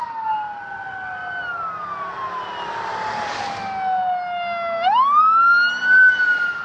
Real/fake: real